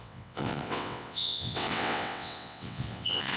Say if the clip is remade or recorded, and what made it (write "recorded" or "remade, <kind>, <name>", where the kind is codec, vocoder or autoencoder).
remade, vocoder, WaveNeXt